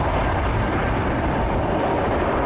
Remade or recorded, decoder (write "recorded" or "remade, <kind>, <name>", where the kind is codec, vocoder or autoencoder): remade, vocoder, BigVGAN v2